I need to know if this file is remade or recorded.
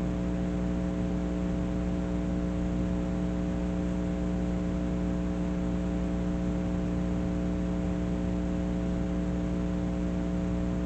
recorded